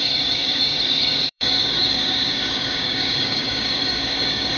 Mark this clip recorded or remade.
remade